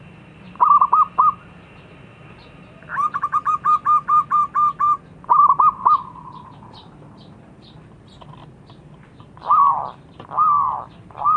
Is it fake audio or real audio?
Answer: fake